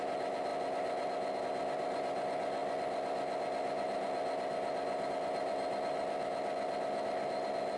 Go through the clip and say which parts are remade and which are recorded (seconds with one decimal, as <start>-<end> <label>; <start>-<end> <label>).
0.0-7.8 recorded